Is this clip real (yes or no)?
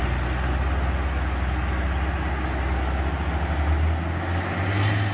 yes